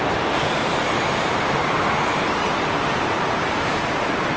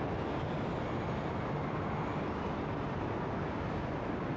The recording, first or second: second